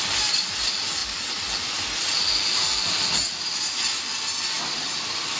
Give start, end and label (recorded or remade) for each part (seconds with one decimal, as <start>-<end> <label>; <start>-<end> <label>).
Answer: 0.0-3.2 recorded; 3.2-3.8 remade; 3.8-5.4 recorded